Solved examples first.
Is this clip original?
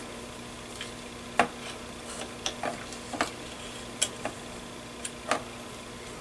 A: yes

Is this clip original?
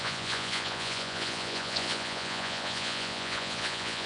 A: no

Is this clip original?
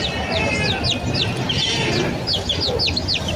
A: yes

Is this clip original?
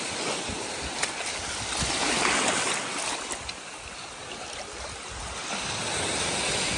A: yes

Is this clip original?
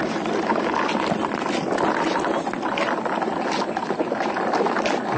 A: yes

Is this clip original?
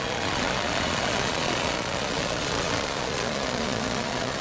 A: no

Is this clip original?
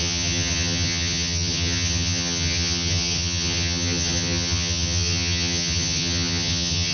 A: no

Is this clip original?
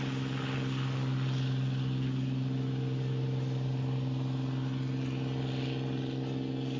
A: yes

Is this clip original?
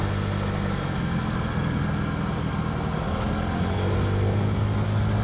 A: yes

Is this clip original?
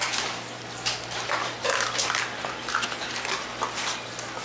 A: yes